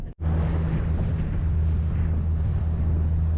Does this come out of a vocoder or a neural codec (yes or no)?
no